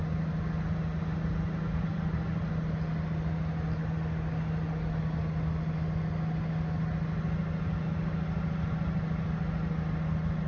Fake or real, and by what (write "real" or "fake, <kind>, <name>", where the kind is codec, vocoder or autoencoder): real